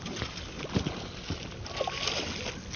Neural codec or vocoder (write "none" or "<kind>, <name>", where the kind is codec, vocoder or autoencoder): none